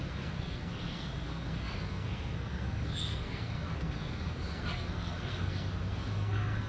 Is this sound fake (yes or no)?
yes